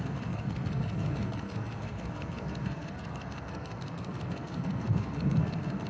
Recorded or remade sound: remade